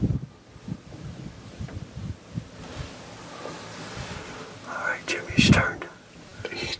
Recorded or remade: recorded